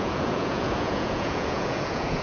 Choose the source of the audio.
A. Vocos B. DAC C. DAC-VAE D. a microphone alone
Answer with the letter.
A